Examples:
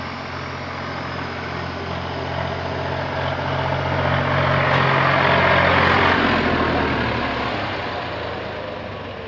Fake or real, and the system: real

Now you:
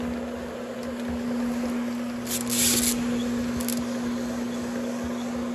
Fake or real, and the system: real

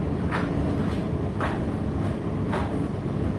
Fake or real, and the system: real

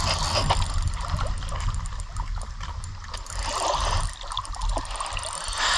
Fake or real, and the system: real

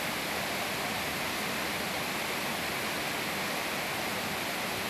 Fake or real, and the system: real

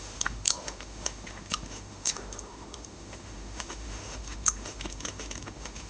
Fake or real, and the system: fake, autoencoder, DAC-VAE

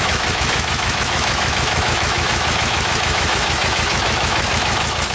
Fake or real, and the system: fake, autoencoder, DAC-VAE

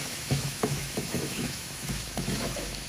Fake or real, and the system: fake, autoencoder, DAC-VAE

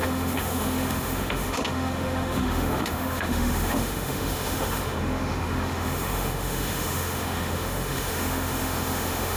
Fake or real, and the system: fake, autoencoder, DAC-VAE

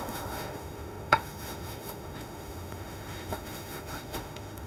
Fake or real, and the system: fake, autoencoder, DAC-VAE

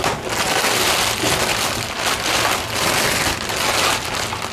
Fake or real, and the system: real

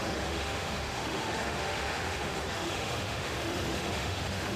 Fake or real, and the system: fake, autoencoder, DAC-VAE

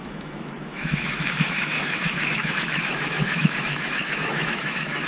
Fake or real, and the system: fake, autoencoder, DAC-VAE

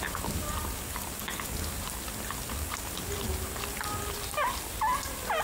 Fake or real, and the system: real